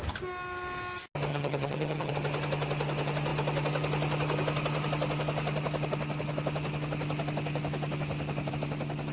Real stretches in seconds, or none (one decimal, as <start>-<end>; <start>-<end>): 0.0-1.3; 2.1-9.1